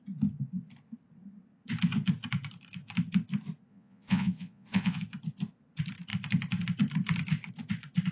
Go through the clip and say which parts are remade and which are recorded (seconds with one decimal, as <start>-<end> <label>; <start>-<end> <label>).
0.0-3.7 recorded; 3.7-5.0 remade; 5.0-8.1 recorded